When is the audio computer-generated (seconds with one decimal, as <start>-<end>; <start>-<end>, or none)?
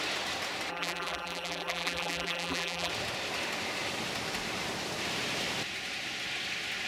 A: 0.7-2.9